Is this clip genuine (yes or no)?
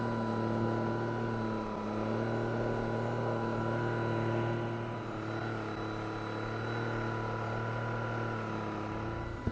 yes